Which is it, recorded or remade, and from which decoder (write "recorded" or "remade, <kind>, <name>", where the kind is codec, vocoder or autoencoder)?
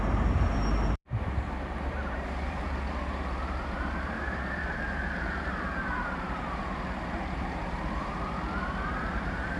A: remade, vocoder, BigVGAN v2